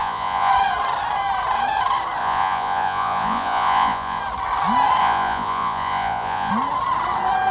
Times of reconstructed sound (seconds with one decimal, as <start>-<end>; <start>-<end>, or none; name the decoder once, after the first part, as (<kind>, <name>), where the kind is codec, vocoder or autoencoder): 0.0-0.5 (vocoder, Vocos); 2.2-4.2; 5.0-6.5